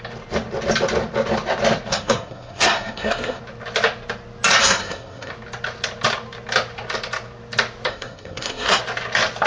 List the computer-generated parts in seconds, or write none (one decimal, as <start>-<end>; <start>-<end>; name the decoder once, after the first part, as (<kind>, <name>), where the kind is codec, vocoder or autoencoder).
1.9-3.4 (codec, SNAC); 4.6-5.3; 7.9-8.8